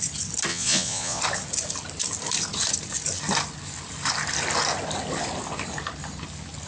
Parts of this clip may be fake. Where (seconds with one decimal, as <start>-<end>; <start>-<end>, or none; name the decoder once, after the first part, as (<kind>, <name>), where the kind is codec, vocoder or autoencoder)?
0.5-1.2 (vocoder, Vocos)